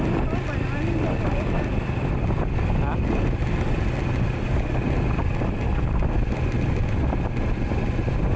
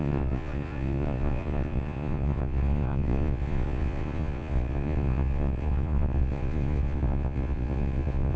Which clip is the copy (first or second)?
second